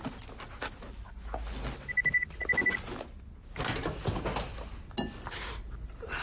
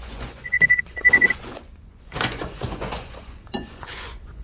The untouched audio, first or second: first